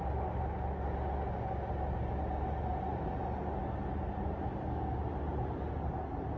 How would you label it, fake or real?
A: real